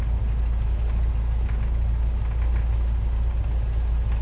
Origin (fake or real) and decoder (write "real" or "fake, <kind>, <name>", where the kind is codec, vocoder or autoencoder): real